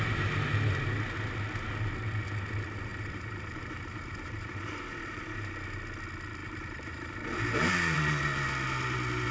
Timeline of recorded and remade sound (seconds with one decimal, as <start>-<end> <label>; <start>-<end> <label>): 0.0-2.9 recorded; 2.9-5.2 remade; 5.2-6.4 recorded; 6.4-8.0 remade; 8.0-9.3 recorded